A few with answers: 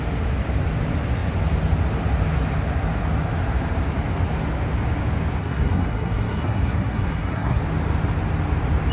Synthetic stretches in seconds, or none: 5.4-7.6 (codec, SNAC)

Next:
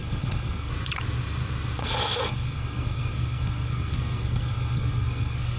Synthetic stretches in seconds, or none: 0.0-0.7 (codec, SNAC); 1.8-5.6

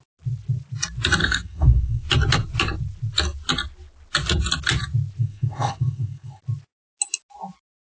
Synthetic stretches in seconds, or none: 1.2-2.1 (codec, SNAC); 5.2-6.4

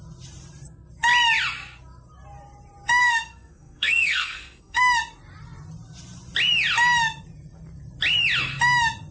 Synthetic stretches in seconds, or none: 3.0-4.8 (codec, SNAC)

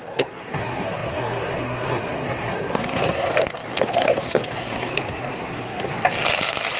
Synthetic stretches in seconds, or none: 0.0-3.3 (codec, SNAC); 3.8-5.9

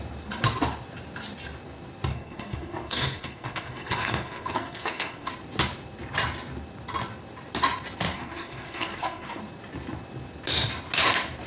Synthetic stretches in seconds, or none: 2.1-5.3 (codec, SNAC); 8.1-9.4

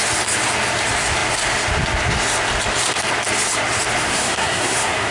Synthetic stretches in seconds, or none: 4.1-5.1 (codec, SNAC)